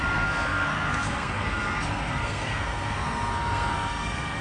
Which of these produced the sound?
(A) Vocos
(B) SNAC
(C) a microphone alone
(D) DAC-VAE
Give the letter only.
B